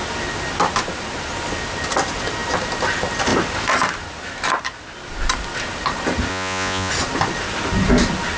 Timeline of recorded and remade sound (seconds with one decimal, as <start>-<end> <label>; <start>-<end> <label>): 0.0-6.3 recorded; 6.3-6.9 remade; 6.9-8.4 recorded